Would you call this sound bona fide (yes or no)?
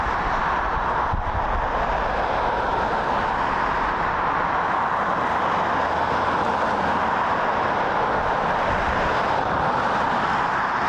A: yes